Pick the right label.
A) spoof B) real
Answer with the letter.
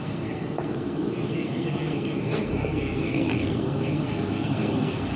A